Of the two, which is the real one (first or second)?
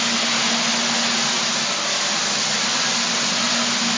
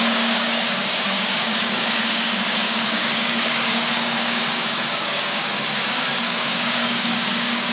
first